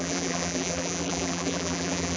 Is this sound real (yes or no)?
no